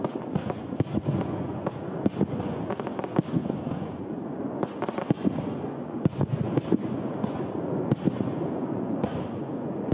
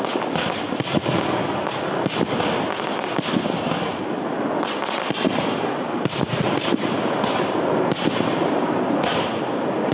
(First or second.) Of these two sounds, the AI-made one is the first